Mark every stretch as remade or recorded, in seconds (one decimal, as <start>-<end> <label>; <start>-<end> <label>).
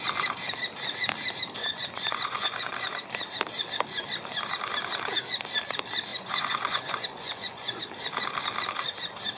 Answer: 0.0-1.6 recorded; 1.6-2.9 remade; 2.9-6.1 recorded; 6.1-7.8 remade; 7.8-9.4 recorded